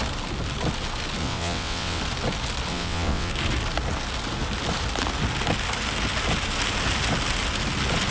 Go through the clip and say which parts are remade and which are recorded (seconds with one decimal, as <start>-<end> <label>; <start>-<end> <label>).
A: 0.0-1.2 recorded; 1.2-2.0 remade; 2.0-2.7 recorded; 2.7-3.3 remade; 3.3-8.1 recorded